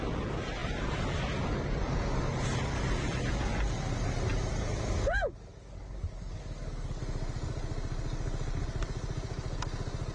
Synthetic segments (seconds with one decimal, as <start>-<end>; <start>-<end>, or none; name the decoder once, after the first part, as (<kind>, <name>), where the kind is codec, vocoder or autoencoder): 5.5-7.0 (codec, DAC)